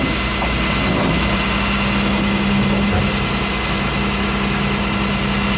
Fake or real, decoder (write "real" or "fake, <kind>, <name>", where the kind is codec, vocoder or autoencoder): real